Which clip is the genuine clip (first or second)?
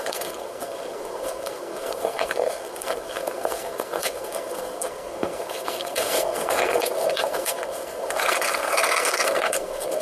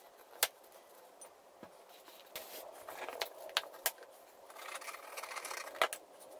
second